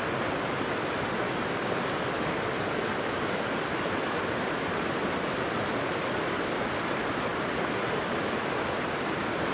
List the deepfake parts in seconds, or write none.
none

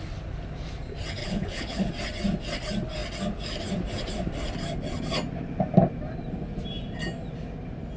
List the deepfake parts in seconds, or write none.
1.2-1.9